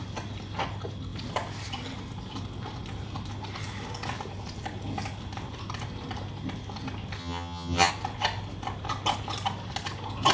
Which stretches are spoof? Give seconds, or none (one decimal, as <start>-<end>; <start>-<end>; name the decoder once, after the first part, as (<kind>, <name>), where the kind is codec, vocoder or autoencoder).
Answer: 7.2-7.9 (vocoder, HiFi-GAN)